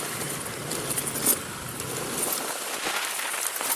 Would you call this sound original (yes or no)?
yes